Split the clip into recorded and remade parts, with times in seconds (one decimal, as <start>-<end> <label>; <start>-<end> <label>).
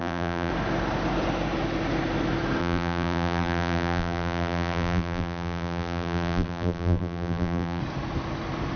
0.0-0.5 remade; 0.5-2.6 recorded; 2.6-7.8 remade; 7.8-8.8 recorded